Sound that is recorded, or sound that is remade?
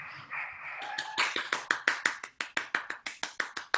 recorded